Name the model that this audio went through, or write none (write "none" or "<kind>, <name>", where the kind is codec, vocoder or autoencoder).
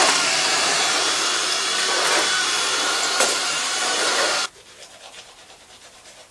vocoder, BigVGAN v2